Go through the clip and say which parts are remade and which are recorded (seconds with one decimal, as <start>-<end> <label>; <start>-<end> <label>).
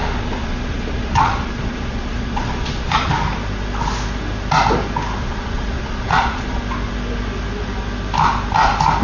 0.0-3.1 remade; 3.1-5.2 recorded; 5.2-6.6 remade; 6.6-9.0 recorded